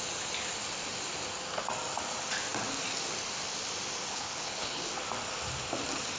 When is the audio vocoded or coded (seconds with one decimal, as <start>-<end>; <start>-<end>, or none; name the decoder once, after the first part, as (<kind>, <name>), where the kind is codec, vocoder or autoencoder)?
4.1-4.9 (codec, HILCodec)